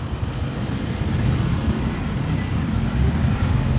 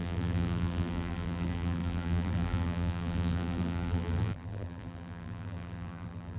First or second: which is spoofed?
second